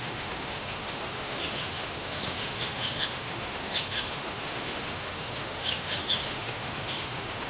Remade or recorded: remade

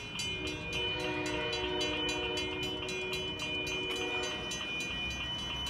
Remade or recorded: recorded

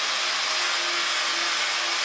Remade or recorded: recorded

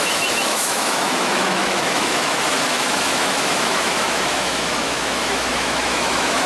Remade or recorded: remade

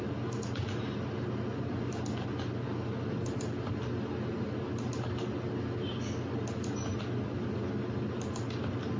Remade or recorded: recorded